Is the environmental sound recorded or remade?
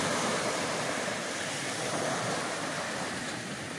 remade